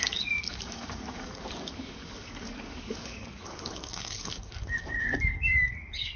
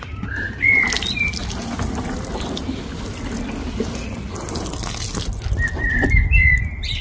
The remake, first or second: first